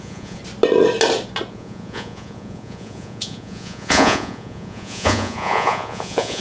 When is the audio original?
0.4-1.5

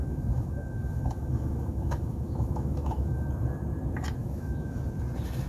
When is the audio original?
3.3-4.2; 4.8-5.5